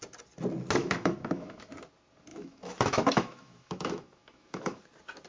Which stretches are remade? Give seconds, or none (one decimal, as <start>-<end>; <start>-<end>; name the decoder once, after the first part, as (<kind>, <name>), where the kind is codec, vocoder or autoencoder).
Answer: 0.8-1.7 (autoencoder, DAC-VAE); 2.3-4.8